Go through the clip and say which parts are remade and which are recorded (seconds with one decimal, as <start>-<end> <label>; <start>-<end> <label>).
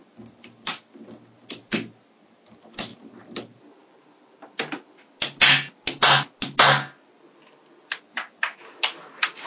0.0-9.5 recorded